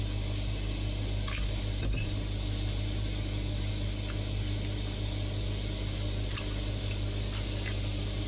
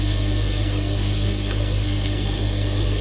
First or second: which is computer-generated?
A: second